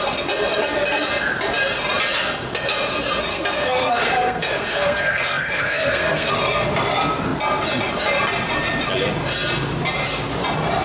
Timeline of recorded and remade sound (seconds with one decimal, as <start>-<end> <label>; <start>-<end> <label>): 0.0-3.3 recorded; 3.3-6.3 remade; 6.3-10.8 recorded